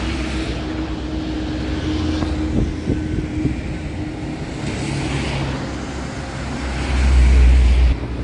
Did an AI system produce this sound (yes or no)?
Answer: no